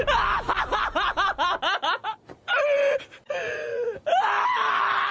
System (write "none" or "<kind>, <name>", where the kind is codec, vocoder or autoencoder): none